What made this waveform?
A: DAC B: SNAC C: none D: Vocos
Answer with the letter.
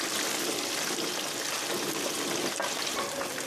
C